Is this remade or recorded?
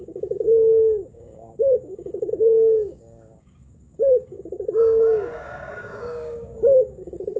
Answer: remade